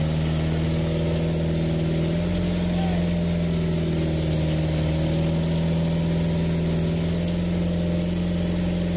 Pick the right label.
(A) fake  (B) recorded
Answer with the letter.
B